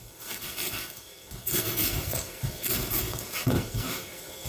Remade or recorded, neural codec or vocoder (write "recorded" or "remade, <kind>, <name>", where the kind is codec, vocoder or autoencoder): remade, codec, SNAC